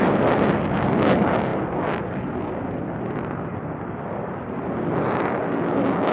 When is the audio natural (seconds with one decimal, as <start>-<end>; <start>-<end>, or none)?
0.0-6.1